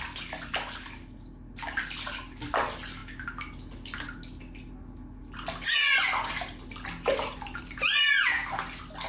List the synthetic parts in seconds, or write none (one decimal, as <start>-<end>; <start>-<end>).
none